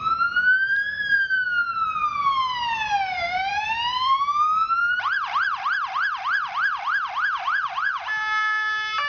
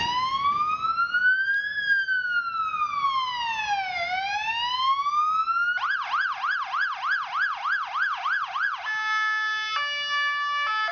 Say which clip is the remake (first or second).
first